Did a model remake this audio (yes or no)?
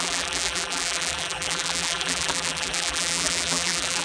yes